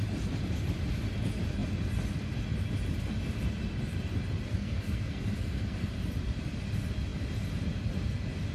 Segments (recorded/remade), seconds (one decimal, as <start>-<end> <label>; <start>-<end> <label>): 0.0-4.5 recorded; 4.5-5.9 remade; 5.9-8.5 recorded